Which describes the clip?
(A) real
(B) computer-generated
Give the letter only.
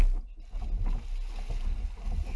A